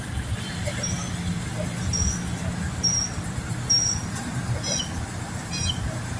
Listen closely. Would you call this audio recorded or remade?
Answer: recorded